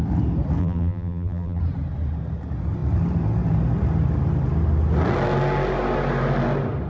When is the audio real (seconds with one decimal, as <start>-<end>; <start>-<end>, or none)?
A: 0.0-0.6; 1.6-6.9